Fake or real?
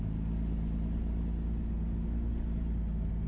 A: real